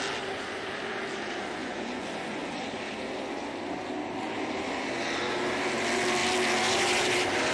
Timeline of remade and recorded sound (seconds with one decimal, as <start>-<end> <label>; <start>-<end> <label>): 0.0-1.6 recorded; 1.6-2.6 remade; 2.6-7.5 recorded